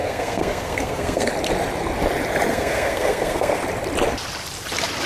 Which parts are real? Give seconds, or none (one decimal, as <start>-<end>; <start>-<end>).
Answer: 1.3-2.5; 3.6-5.1